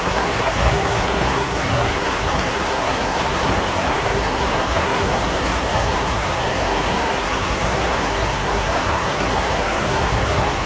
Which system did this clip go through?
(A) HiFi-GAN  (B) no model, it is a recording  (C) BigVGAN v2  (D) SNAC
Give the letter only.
D